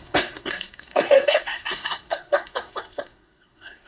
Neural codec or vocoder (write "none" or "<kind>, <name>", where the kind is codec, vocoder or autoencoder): codec, SNAC